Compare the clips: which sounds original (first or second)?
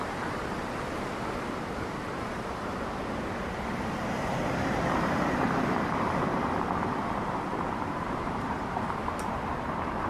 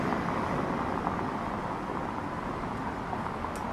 second